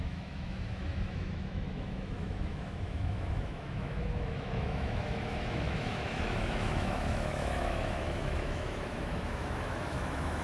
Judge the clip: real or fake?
fake